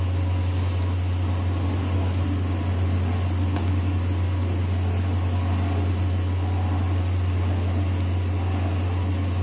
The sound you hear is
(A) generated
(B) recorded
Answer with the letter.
B